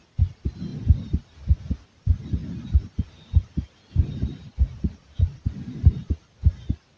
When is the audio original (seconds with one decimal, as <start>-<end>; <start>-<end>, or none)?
0.0-7.0